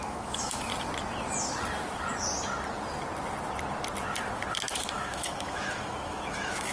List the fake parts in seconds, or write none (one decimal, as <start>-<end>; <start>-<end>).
0.0-0.7; 4.7-6.7